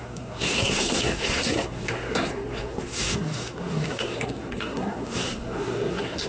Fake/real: fake